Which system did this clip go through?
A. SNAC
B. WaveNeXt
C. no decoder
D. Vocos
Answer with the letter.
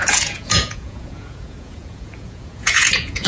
D